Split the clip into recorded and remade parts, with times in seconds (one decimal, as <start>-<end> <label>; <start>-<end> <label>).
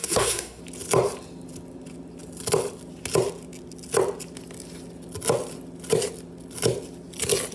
0.0-0.6 remade; 0.6-7.5 recorded